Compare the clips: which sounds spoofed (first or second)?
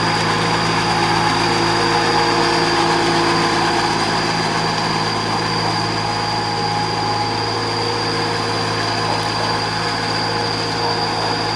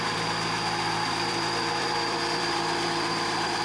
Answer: second